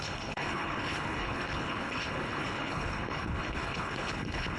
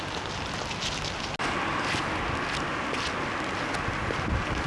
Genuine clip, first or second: second